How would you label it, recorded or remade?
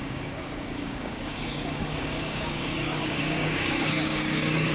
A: remade